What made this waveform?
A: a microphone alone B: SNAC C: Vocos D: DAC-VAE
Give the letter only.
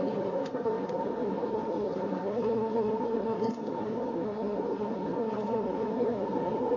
B